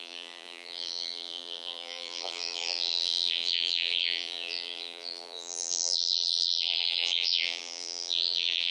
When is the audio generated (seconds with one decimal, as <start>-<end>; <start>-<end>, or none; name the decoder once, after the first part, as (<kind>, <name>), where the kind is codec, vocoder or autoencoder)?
0.0-8.7 (vocoder, BigVGAN v2)

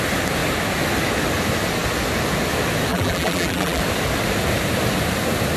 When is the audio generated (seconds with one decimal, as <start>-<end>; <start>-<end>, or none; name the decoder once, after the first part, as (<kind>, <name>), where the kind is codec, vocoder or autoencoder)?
2.9-3.8 (vocoder, BigVGAN v2)

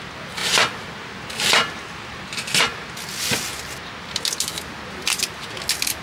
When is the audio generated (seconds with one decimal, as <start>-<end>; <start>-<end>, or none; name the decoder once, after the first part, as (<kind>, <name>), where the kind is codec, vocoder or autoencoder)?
none

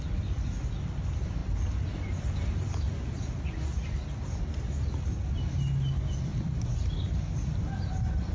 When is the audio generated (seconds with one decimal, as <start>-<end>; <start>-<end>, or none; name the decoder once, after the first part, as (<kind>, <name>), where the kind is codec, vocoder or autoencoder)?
6.3-7.6 (vocoder, BigVGAN v2)

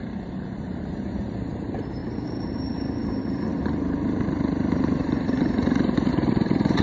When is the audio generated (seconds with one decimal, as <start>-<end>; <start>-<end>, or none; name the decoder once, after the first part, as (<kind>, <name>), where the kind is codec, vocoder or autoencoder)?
0.0-6.8 (vocoder, BigVGAN v2)

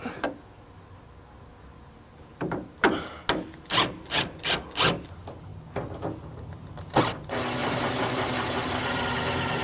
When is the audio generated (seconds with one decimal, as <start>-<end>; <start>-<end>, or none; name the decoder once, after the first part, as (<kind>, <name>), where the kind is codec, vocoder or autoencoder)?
2.3-3.2 (vocoder, BigVGAN v2); 7.6-9.0